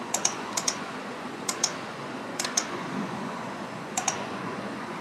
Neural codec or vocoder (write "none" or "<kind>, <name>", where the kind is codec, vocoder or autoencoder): vocoder, Vocos